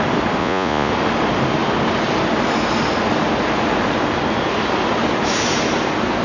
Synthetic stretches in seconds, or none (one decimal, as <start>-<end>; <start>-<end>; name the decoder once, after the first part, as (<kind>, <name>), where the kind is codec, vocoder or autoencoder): 0.4-0.9 (vocoder, Vocos)